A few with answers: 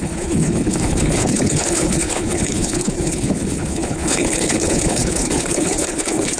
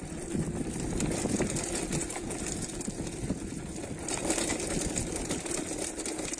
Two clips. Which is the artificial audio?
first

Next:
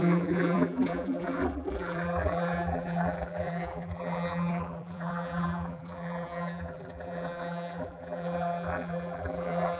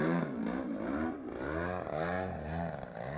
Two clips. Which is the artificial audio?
first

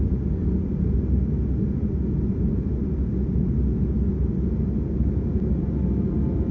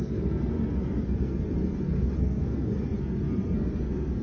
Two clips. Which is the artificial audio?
second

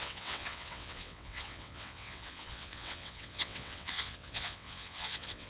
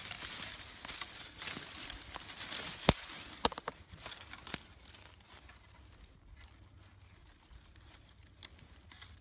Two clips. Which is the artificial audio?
first